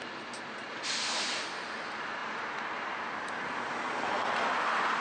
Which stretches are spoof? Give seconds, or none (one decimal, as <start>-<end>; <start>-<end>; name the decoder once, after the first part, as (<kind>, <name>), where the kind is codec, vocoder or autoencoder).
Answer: none